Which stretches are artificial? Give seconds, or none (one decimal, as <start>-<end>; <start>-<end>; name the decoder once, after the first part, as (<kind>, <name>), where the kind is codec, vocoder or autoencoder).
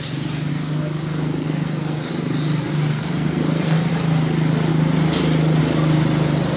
0.5-2.1 (codec, SNAC); 2.9-3.9